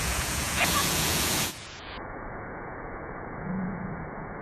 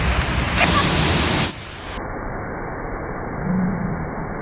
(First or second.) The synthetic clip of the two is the first